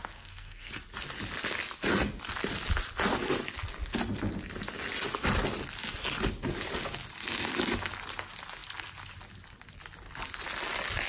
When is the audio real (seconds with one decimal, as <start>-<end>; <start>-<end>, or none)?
0.7-11.1

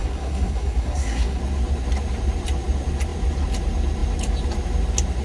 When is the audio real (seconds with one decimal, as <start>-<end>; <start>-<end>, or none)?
1.4-5.2

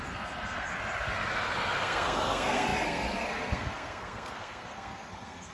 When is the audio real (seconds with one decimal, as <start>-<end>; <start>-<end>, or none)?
0.7-1.3

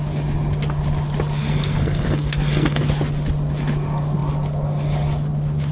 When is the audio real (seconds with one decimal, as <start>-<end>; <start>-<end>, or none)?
0.0-1.4; 2.8-5.7